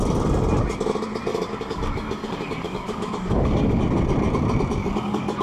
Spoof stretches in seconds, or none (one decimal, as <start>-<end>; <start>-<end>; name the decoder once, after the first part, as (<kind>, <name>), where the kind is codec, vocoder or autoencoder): 1.3-3.8 (codec, DAC); 4.8-5.4

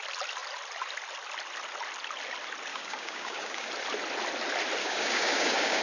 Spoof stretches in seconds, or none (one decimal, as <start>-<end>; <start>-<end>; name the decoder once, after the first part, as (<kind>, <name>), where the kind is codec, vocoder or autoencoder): 2.7-3.7 (codec, DAC); 4.8-5.8